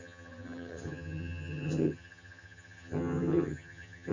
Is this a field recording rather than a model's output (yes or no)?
no